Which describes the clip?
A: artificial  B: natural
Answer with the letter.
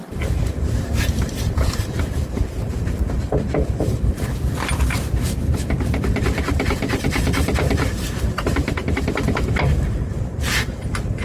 A